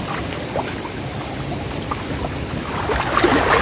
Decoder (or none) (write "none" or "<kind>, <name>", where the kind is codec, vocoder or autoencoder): none